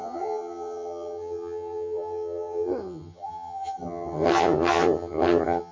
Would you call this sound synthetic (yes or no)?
yes